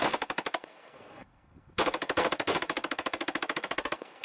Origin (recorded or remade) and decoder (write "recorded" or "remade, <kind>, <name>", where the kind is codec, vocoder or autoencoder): remade, codec, SNAC